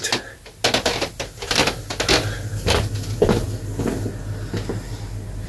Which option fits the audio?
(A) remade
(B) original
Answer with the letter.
B